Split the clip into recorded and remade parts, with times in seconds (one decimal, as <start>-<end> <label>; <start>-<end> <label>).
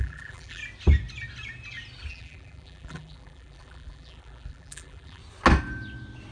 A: 0.0-0.6 remade; 0.6-2.1 recorded; 2.1-5.2 remade; 5.2-6.3 recorded